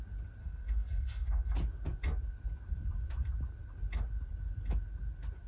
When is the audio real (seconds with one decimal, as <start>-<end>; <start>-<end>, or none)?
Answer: 0.0-0.4; 1.5-5.5